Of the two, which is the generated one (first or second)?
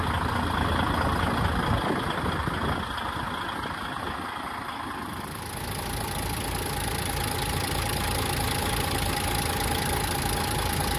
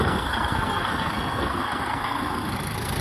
second